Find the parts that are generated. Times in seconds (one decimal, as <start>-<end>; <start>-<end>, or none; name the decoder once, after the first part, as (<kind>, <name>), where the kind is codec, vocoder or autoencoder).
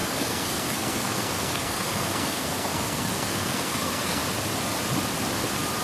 0.0-4.2 (codec, SNAC)